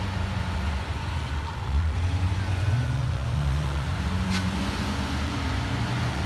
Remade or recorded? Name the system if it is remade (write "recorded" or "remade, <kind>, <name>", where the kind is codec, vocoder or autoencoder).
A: remade, vocoder, Vocos